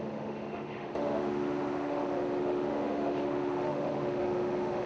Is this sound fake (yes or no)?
yes